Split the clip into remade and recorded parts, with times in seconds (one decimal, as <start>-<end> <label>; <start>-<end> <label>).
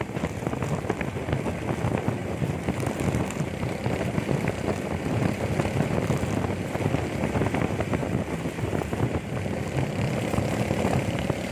0.0-2.2 recorded; 2.2-5.6 remade; 5.6-8.0 recorded; 8.0-8.9 remade; 8.9-11.5 recorded